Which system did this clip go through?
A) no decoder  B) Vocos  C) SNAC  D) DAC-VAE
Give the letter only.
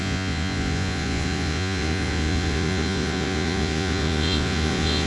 B